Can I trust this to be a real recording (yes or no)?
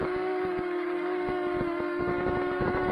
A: no